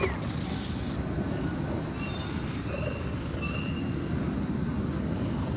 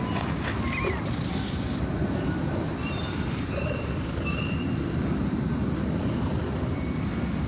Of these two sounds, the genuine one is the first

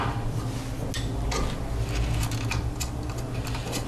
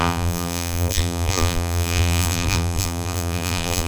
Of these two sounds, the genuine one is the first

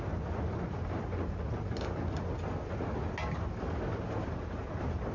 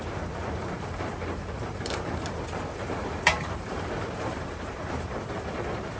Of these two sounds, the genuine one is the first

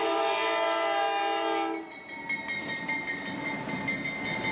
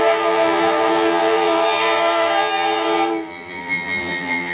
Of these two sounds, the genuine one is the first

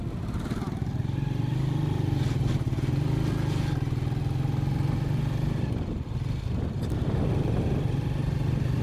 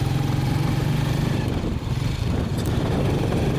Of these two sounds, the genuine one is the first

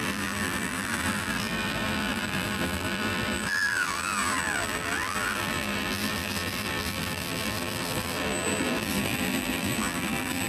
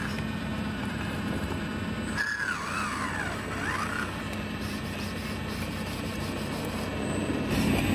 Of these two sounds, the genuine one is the second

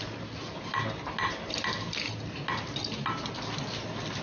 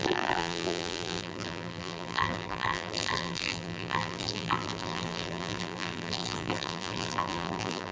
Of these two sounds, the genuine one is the first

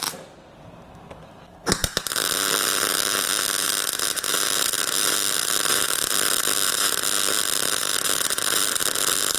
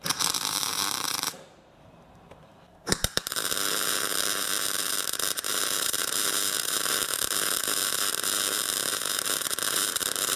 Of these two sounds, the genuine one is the first